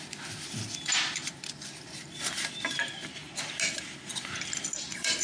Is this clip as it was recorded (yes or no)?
yes